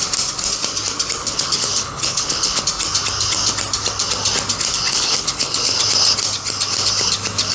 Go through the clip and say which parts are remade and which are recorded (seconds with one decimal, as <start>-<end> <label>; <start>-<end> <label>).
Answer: 0.0-1.2 recorded; 1.2-2.6 remade; 2.6-4.9 recorded; 4.9-5.8 remade; 5.8-7.5 recorded